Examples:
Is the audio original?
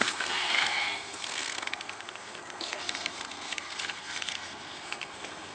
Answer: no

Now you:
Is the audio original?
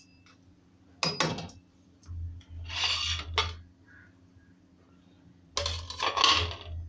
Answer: yes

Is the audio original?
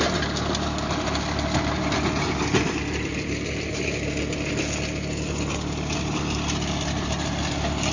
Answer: yes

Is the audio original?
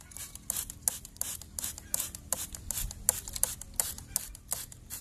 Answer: yes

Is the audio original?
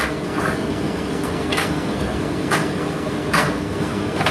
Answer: no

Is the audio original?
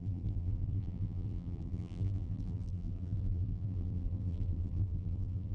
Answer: no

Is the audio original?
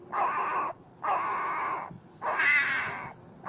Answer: yes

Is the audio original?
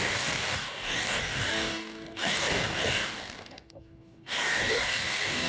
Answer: no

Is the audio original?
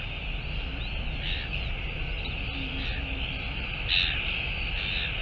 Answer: yes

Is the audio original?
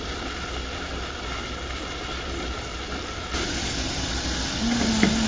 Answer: yes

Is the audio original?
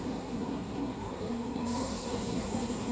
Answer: no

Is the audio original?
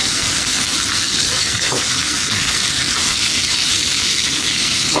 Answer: no